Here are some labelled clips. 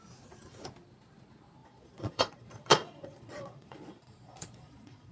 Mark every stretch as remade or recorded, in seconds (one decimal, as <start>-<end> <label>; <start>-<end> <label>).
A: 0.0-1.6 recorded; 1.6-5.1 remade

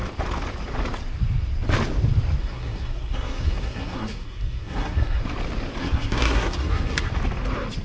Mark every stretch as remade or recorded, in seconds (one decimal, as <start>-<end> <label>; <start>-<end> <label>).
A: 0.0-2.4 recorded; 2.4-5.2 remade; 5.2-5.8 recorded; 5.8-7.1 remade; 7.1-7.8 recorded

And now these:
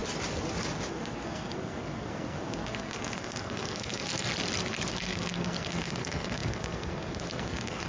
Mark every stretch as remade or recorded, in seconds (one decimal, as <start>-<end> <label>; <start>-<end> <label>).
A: 0.0-0.9 recorded; 0.9-4.3 remade; 4.3-4.9 recorded; 4.9-7.9 remade